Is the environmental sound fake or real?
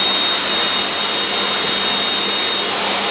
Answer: real